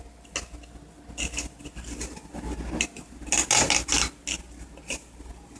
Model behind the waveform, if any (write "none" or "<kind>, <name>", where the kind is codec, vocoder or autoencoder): none